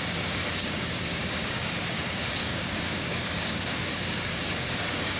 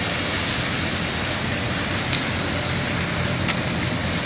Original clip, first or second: second